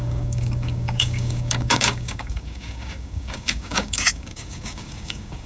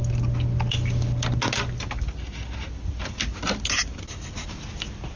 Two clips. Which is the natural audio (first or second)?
second